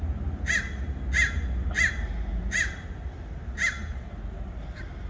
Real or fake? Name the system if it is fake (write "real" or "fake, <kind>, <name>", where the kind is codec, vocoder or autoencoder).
real